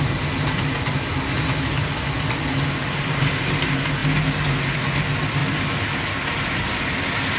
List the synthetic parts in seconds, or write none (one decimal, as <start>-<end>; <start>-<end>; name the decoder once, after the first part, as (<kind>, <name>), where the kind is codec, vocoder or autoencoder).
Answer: none